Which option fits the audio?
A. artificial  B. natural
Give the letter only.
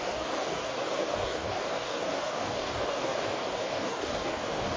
A